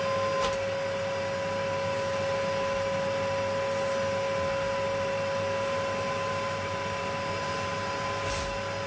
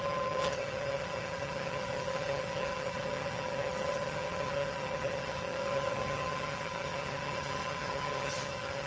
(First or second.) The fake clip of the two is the second